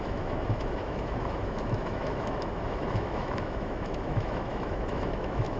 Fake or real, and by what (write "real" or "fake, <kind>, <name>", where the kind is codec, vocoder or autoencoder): fake, autoencoder, DAC-VAE